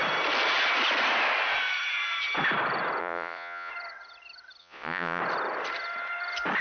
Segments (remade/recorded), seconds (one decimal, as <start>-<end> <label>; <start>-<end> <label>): 0.0-3.0 recorded; 3.0-3.7 remade; 3.7-4.6 recorded; 4.6-5.2 remade; 5.2-6.6 recorded

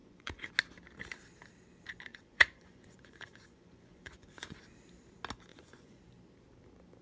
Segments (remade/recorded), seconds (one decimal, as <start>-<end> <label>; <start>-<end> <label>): 0.0-0.5 remade; 0.5-2.1 recorded; 2.1-4.6 remade; 4.6-5.5 recorded; 5.5-6.0 remade; 6.0-7.0 recorded

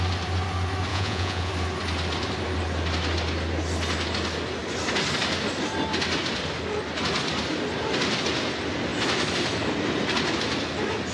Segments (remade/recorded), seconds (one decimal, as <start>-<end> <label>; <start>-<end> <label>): 0.0-0.9 recorded; 0.9-1.5 remade; 1.5-11.1 recorded

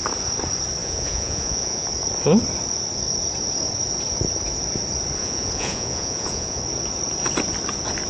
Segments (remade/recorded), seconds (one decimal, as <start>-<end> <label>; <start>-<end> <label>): 0.0-0.8 recorded; 0.8-1.9 remade; 1.9-5.2 recorded; 5.2-6.6 remade; 6.6-8.1 recorded

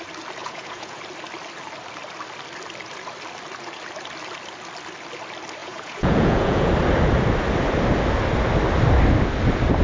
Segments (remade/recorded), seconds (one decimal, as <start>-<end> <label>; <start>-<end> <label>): 0.0-0.4 recorded; 0.4-1.0 remade; 1.0-5.6 recorded; 5.6-6.7 remade; 6.7-9.8 recorded